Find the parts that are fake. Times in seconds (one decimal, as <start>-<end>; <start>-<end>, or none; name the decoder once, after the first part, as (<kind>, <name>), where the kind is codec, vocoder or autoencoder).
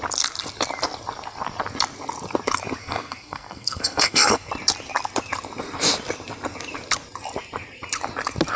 2.8-4.5 (codec, SNAC)